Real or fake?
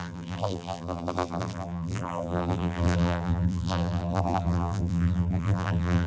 fake